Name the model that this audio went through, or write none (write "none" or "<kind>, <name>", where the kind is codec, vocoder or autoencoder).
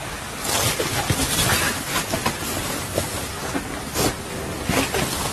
none